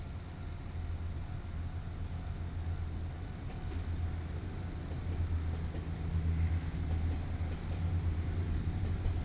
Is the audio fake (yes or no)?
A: no